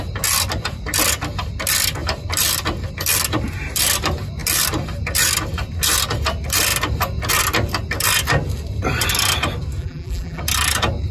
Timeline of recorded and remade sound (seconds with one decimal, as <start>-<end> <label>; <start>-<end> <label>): 0.0-9.8 recorded; 9.8-10.4 remade; 10.4-11.1 recorded